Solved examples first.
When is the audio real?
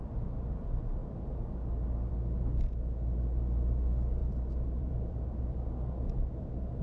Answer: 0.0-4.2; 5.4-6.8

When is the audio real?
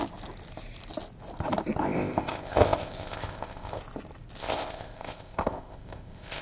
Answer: 0.0-1.8; 3.8-4.4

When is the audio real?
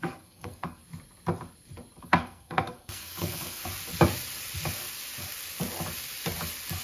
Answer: 0.8-2.0; 3.6-6.8